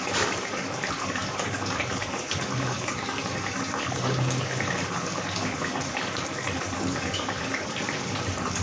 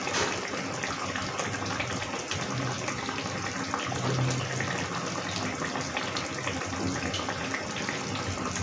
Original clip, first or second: second